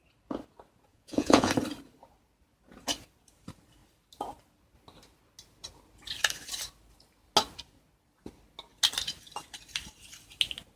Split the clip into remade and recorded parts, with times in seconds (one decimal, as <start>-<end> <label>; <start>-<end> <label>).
0.0-0.9 recorded; 0.9-1.5 remade; 1.5-10.8 recorded